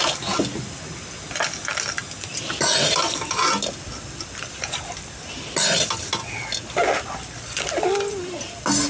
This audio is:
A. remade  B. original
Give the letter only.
B